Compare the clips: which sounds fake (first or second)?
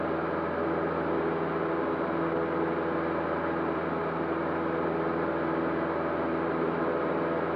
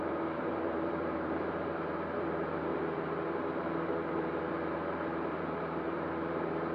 second